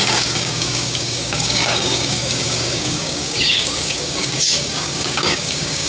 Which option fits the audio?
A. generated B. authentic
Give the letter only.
A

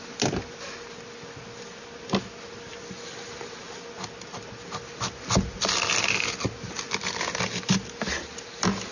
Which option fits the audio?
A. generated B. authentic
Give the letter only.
B